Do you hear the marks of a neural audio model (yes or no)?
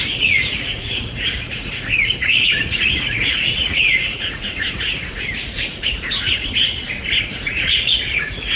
yes